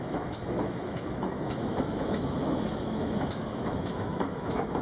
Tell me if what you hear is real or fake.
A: fake